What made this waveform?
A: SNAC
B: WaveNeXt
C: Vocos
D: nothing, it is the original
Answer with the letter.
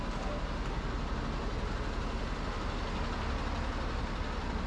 D